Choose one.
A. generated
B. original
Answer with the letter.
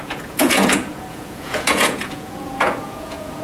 A